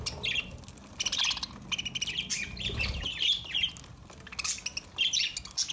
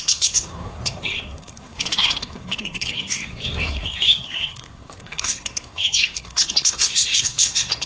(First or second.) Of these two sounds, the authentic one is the first